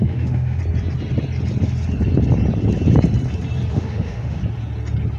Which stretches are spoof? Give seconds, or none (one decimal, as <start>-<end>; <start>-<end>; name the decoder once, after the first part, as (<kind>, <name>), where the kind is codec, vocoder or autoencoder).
0.0-0.6 (autoencoder, DAC-VAE); 3.7-4.4